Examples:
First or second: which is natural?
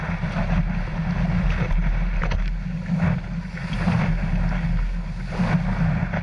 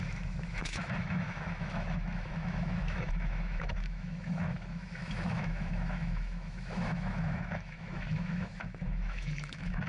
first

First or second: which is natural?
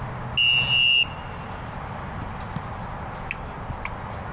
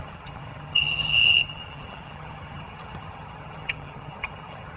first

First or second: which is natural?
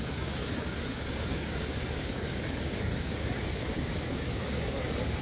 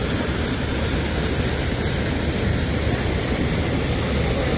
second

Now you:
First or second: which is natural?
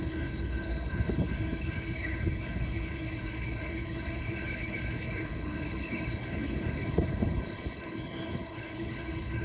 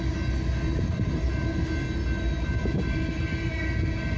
second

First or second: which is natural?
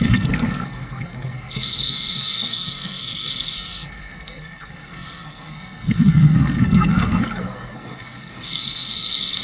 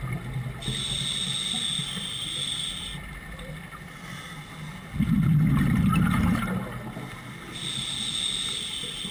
second